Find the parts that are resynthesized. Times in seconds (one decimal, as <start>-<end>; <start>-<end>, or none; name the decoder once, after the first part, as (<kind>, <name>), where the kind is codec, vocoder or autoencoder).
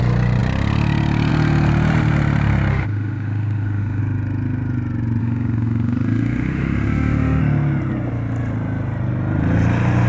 2.7-4.0 (autoencoder, DAC-VAE); 5.2-7.4